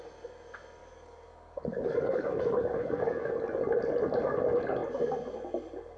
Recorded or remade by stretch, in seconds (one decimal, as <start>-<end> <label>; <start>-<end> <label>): 0.0-0.8 recorded; 0.8-3.3 remade; 3.3-6.0 recorded